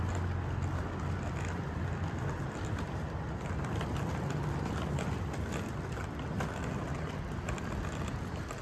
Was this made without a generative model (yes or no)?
yes